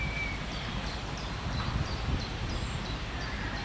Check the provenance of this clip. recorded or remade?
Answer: remade